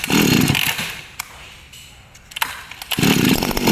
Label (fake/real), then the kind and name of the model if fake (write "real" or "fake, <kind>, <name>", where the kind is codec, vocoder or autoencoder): real